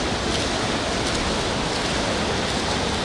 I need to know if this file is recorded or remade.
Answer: recorded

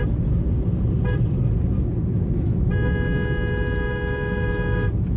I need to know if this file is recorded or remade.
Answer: recorded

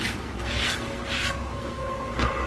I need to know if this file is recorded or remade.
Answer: remade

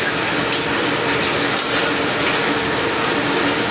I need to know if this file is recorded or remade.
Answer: recorded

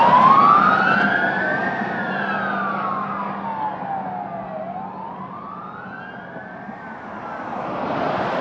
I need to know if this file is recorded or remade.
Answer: recorded